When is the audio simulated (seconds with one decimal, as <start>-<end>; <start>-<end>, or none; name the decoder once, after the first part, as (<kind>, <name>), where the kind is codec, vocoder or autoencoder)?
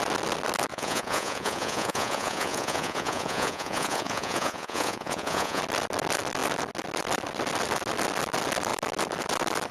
0.7-5.6 (vocoder, Vocos)